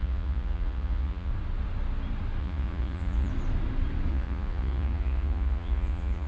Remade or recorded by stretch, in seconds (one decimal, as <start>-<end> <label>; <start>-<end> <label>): 0.0-1.3 remade; 1.3-2.4 recorded; 2.4-3.3 remade; 3.3-4.1 recorded; 4.1-6.3 remade